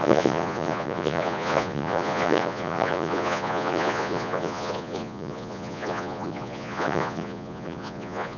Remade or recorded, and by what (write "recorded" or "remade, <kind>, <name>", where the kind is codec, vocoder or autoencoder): remade, vocoder, Vocos